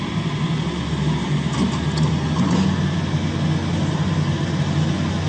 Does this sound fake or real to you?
real